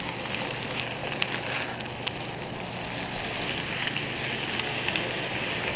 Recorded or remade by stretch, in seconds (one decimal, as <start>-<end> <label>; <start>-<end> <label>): 0.0-5.8 recorded